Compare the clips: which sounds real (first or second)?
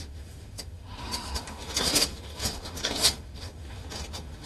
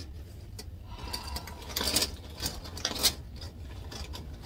second